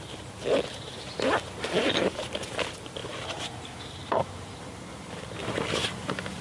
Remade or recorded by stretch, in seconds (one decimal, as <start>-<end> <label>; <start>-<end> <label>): 0.0-3.0 recorded; 3.0-4.6 remade; 4.6-6.4 recorded